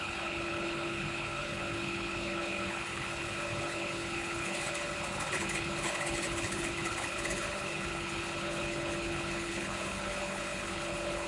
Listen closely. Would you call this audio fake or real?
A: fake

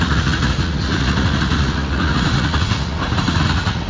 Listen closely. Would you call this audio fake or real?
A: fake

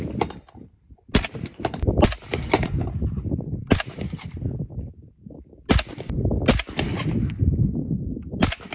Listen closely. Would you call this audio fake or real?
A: real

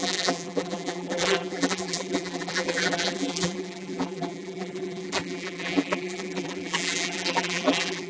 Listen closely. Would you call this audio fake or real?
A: fake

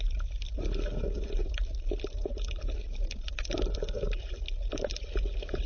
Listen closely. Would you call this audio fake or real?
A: real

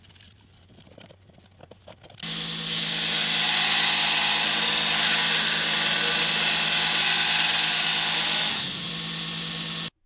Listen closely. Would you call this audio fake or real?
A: real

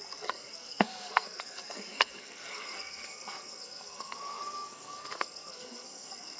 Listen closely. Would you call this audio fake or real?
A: fake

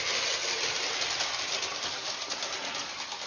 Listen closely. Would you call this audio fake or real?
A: real